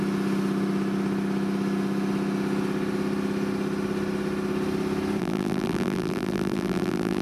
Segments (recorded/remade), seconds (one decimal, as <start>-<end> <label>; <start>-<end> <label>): 0.0-5.2 recorded; 5.2-7.2 remade